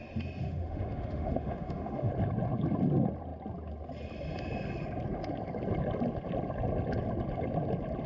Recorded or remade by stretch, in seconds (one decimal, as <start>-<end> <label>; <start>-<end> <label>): 0.0-0.4 recorded; 0.4-2.1 remade; 2.1-8.1 recorded